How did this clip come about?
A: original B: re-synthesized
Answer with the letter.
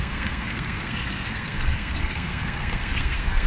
B